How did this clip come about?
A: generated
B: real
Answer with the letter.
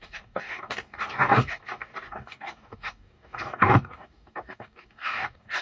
A